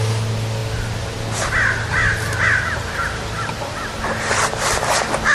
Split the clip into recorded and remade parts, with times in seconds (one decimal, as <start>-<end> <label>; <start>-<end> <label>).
0.0-5.3 remade